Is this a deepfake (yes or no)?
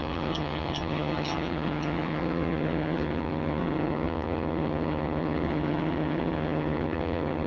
yes